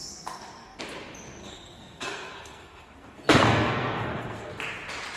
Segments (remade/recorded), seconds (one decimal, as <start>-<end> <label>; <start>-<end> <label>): 0.0-0.8 remade; 0.8-1.4 recorded; 1.4-4.5 remade; 4.5-5.2 recorded